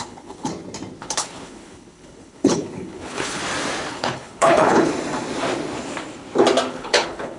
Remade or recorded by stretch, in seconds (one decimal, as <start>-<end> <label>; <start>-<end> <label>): 0.0-0.5 remade; 0.5-1.0 recorded; 1.0-3.4 remade; 3.4-3.9 recorded; 3.9-4.9 remade; 4.9-6.7 recorded; 6.7-7.4 remade